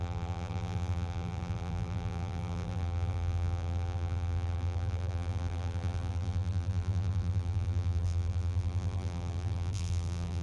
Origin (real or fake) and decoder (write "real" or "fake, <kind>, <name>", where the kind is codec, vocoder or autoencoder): fake, vocoder, BigVGAN v2